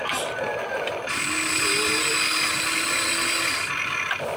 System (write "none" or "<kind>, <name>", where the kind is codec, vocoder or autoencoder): none